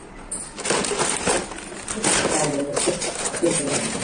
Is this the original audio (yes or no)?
yes